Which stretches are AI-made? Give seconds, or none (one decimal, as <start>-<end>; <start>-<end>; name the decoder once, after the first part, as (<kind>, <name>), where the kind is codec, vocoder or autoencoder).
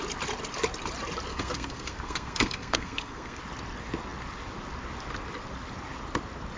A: 1.3-3.4 (codec, SNAC)